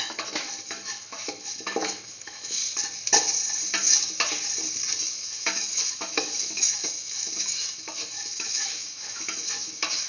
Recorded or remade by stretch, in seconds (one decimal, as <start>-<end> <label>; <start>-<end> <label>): 0.0-2.6 remade; 2.6-5.0 recorded; 5.0-10.1 remade